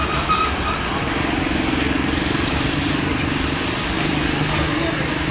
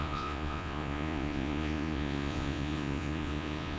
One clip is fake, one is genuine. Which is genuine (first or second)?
first